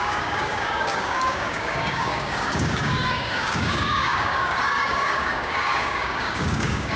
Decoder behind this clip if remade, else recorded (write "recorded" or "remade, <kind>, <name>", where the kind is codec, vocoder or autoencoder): remade, codec, DAC